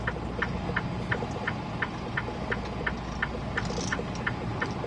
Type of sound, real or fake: real